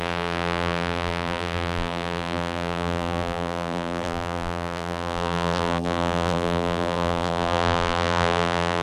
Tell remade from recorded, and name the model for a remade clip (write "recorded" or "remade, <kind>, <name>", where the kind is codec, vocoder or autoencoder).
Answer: remade, vocoder, BigVGAN v2